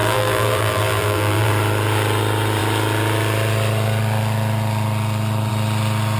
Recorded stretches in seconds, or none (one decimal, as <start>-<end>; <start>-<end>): 1.5-6.2